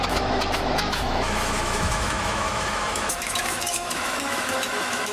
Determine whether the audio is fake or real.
fake